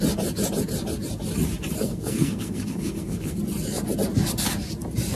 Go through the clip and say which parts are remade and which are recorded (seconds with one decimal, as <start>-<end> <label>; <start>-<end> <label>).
0.0-1.8 recorded; 1.8-3.4 remade; 3.4-5.1 recorded